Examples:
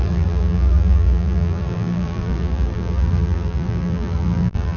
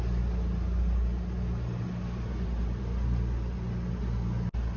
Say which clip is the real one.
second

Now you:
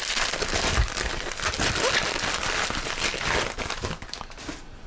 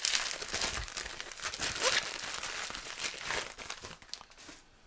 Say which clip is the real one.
second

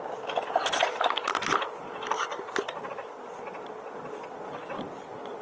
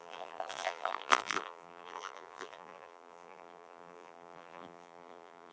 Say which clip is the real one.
first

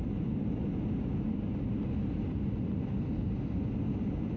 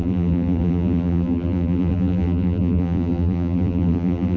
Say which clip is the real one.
first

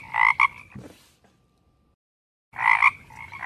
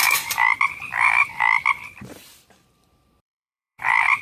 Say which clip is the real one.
first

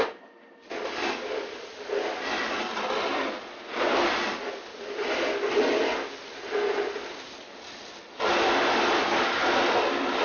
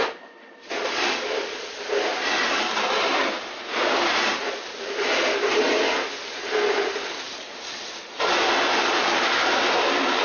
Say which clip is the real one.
first